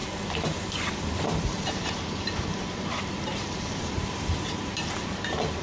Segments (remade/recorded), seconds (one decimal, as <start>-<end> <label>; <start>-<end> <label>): 0.0-1.0 recorded; 1.0-5.6 remade